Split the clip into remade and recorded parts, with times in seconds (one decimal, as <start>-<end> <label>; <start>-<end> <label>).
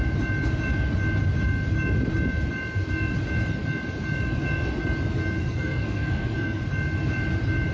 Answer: 0.0-5.4 recorded; 5.4-6.6 remade; 6.6-7.7 recorded